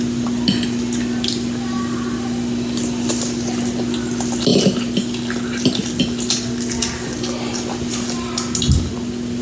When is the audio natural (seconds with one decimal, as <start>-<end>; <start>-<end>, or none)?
0.0-9.4